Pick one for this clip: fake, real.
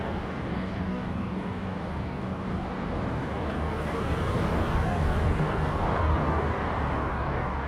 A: fake